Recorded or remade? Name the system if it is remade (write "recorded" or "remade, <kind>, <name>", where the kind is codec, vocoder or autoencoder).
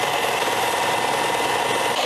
recorded